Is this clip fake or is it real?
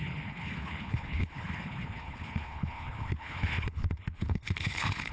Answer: fake